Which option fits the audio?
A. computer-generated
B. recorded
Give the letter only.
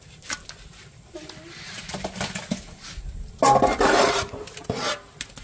B